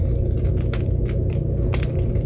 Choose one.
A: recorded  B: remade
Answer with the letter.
A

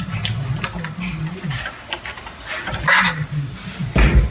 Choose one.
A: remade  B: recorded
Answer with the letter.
B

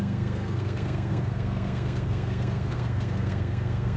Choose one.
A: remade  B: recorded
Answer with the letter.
A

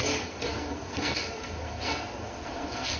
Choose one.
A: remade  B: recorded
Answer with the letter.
A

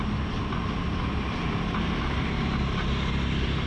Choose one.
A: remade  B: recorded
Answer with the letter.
B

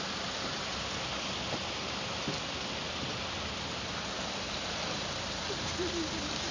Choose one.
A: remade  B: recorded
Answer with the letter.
B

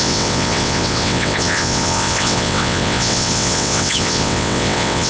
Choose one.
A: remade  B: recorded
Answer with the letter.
A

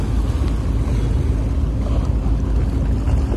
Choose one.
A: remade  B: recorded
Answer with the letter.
B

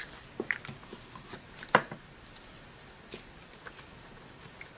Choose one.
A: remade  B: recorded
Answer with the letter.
B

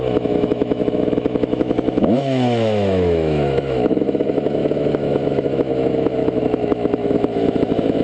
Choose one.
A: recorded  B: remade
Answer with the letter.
B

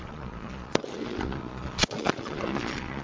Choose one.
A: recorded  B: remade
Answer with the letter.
B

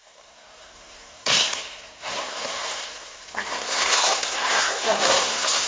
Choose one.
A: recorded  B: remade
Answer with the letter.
B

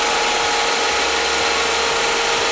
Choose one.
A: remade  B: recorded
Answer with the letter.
B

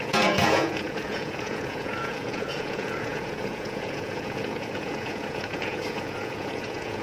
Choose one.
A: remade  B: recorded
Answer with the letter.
A